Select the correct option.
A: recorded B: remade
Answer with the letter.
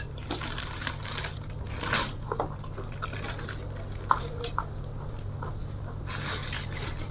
A